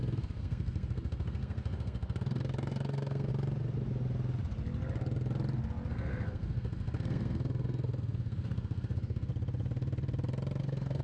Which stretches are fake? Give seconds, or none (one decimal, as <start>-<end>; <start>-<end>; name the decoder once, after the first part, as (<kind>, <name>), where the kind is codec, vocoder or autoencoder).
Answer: 0.0-3.3 (codec, SNAC); 5.9-9.3; 10.6-11.0